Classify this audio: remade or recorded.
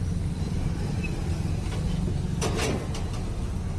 recorded